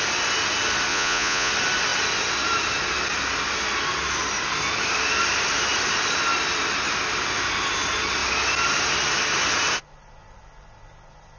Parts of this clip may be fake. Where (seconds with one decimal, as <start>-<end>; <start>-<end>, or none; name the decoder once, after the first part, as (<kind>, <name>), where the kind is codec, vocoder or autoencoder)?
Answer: 0.9-1.5 (vocoder, Vocos)